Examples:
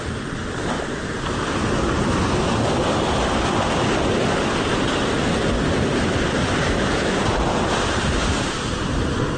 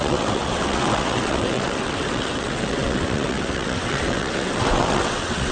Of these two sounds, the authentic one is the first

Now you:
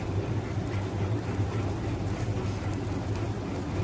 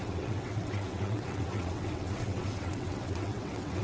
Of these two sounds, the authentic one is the first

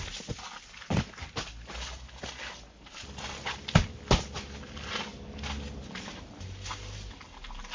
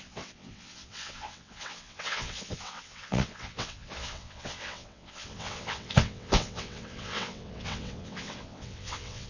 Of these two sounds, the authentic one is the first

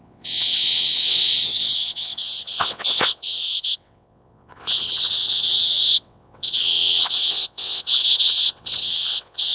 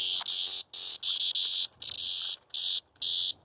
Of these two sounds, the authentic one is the second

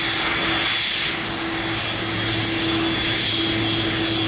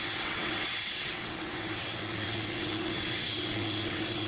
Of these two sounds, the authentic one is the first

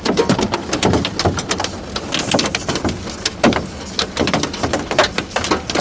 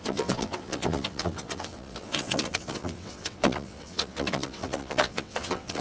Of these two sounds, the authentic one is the first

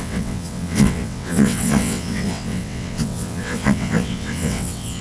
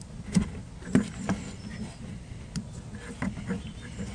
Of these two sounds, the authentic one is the second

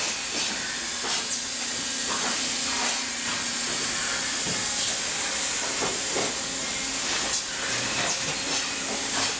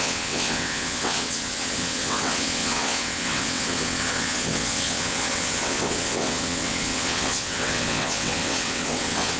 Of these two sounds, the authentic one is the first